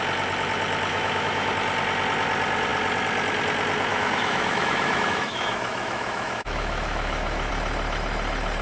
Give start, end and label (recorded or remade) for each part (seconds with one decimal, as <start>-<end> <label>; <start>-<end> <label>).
0.0-0.9 recorded; 0.9-1.5 remade; 1.5-3.9 recorded; 3.9-7.5 remade; 7.5-8.6 recorded